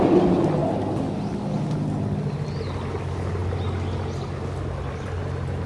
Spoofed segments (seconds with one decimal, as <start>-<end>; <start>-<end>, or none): none